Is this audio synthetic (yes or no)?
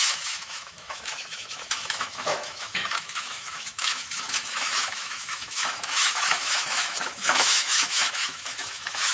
yes